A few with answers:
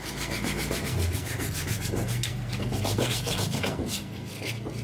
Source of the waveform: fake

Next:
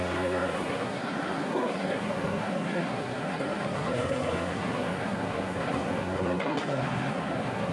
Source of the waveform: fake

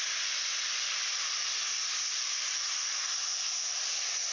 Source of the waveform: real